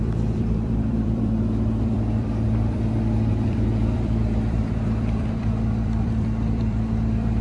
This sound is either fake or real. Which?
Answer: fake